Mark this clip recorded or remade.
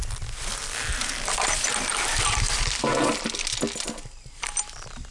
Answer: recorded